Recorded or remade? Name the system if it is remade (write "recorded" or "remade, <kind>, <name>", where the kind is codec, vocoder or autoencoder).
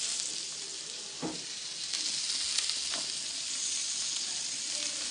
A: recorded